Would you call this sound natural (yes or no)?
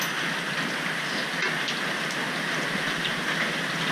yes